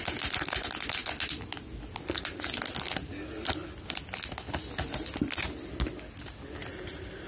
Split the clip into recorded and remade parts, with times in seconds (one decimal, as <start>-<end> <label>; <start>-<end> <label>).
0.0-7.3 recorded